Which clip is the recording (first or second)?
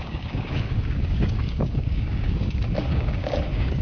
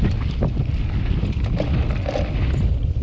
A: second